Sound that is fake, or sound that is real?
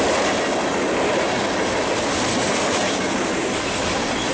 real